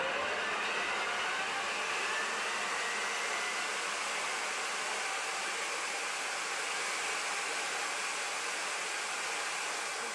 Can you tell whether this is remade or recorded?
recorded